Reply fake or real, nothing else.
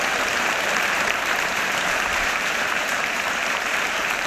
fake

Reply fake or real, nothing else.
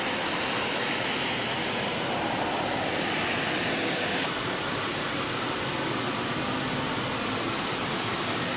real